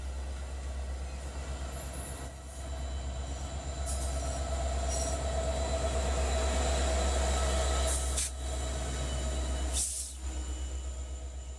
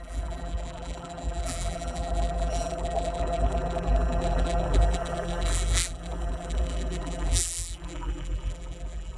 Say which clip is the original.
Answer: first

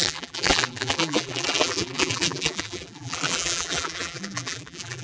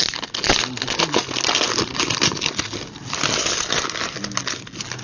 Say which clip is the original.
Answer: second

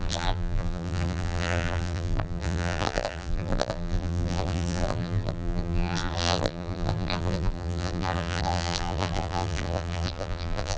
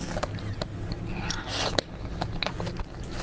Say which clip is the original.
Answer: second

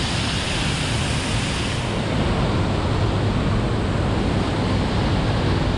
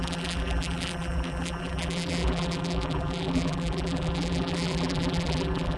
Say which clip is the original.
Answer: first